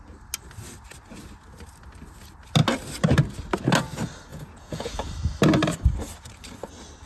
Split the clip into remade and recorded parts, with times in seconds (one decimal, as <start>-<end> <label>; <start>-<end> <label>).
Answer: 0.0-4.3 recorded; 4.3-5.1 remade; 5.1-7.1 recorded